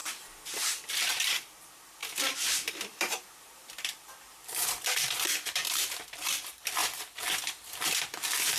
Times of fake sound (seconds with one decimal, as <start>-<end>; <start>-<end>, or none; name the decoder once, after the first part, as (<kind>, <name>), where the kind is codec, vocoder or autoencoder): 0.8-6.8 (vocoder, BigVGAN v2); 7.4-8.6